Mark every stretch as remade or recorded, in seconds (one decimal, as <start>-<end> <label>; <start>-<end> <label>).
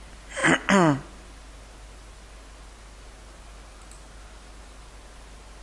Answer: 0.0-5.6 recorded